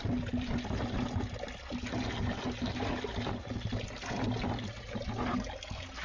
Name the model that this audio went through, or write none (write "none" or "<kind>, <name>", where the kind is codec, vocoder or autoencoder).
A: none